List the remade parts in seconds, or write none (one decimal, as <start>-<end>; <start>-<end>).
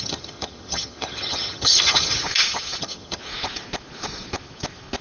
0.0-2.2; 2.8-3.2